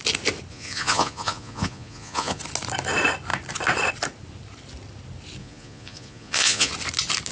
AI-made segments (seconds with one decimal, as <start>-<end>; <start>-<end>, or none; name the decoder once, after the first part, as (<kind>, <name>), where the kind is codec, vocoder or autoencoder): 0.5-2.4 (vocoder, Vocos); 5.4-6.7